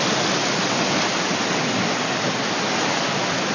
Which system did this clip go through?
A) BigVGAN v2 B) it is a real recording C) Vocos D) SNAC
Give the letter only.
B